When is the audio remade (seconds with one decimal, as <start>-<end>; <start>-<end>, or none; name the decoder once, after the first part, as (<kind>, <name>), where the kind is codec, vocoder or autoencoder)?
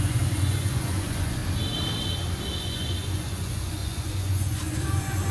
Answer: 0.0-1.4 (vocoder, Vocos); 2.6-5.3